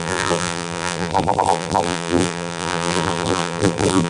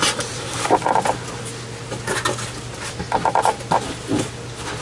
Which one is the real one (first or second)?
second